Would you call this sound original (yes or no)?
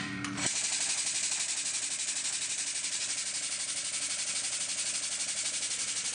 yes